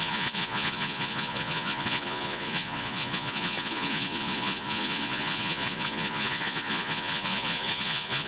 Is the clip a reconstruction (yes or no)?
yes